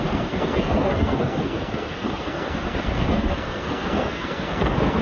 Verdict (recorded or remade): remade